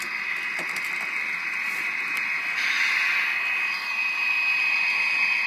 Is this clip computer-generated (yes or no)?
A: no